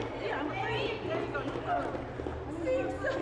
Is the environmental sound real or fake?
real